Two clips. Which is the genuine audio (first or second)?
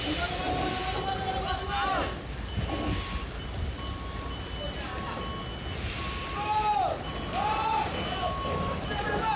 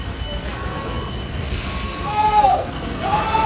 first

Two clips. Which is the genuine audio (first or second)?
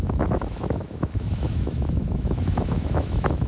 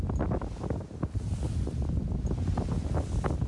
second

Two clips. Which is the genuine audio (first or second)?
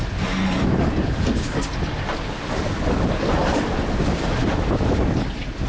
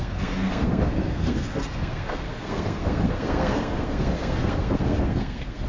first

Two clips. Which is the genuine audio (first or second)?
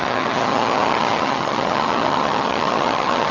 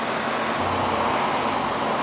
second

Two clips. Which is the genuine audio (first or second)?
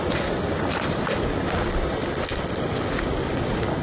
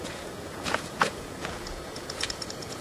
first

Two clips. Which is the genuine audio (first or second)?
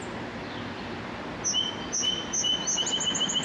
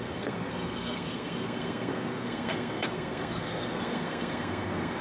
first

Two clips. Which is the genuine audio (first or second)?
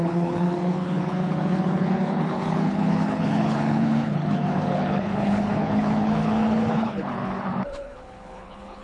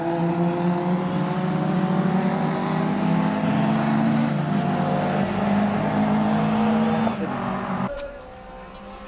second